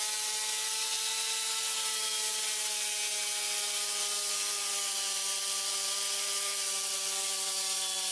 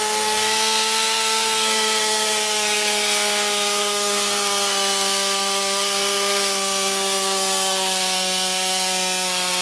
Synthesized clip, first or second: second